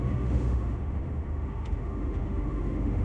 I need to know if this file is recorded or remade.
remade